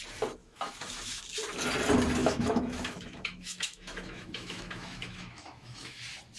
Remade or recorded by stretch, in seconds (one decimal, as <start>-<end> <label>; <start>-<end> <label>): 0.0-0.4 recorded; 0.4-1.2 remade; 1.2-2.2 recorded; 2.2-6.0 remade; 6.0-6.4 recorded